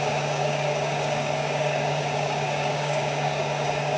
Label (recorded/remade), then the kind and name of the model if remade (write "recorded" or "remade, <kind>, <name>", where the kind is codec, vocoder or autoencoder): remade, codec, DAC